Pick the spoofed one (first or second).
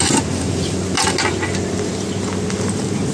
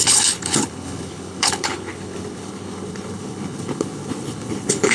second